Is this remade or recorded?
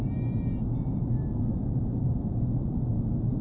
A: recorded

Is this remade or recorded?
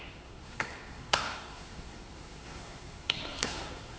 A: remade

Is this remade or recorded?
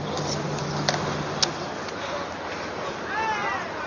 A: recorded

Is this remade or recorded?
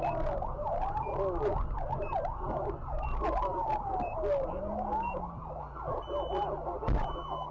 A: recorded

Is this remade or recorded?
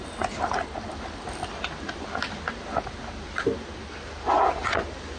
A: recorded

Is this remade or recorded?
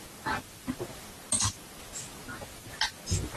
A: recorded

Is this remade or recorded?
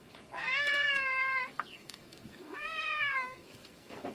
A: remade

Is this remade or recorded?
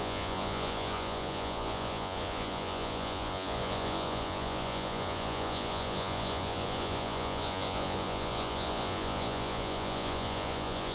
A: remade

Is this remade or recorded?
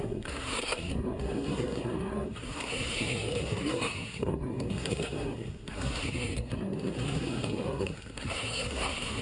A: remade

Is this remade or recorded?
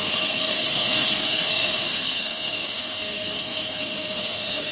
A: remade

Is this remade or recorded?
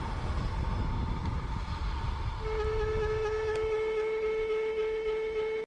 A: recorded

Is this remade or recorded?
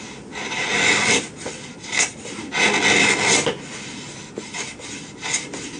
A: recorded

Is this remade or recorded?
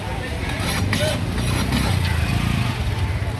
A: recorded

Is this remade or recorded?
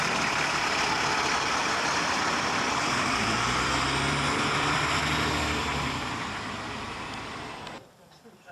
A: remade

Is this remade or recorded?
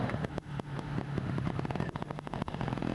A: remade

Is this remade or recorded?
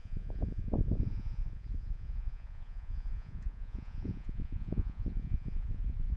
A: remade